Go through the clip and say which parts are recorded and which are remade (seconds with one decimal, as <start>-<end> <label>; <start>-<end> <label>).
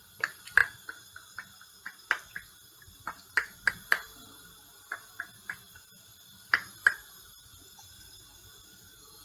0.0-9.2 recorded